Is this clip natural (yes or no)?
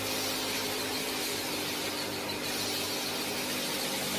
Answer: yes